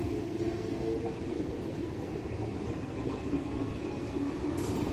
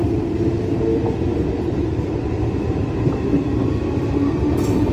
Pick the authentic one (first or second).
second